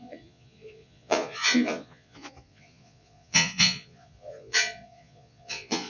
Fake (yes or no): yes